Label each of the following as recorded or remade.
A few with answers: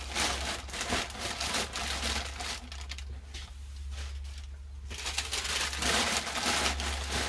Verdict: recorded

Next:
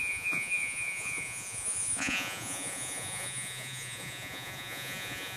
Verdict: remade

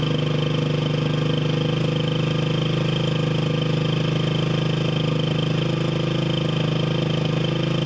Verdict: recorded